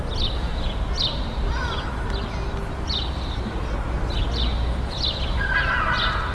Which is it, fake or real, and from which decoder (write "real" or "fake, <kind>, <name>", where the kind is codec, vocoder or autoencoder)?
real